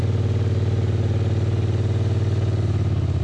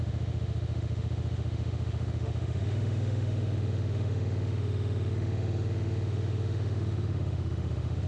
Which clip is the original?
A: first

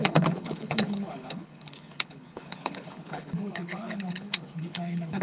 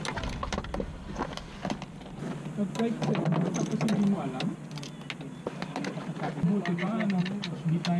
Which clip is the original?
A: second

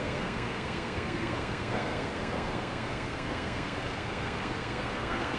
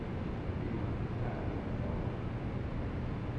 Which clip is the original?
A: second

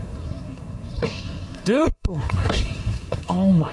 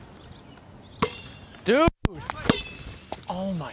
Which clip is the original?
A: second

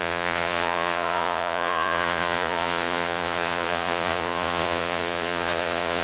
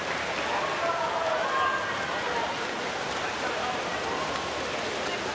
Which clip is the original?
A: second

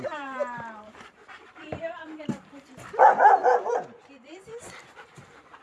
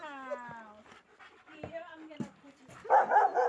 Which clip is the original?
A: second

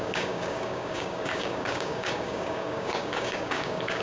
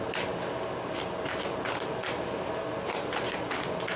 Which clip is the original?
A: second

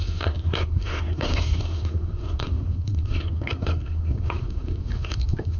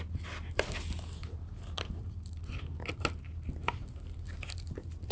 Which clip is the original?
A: second